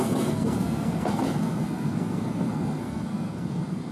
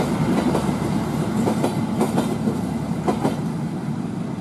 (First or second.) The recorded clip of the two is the second